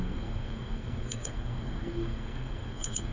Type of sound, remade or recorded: remade